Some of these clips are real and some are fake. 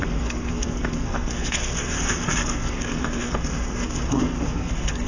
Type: fake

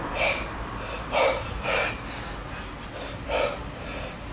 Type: real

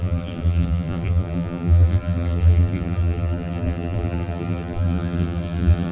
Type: fake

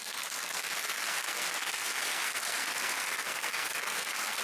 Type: fake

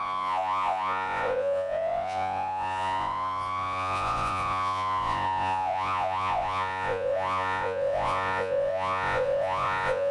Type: fake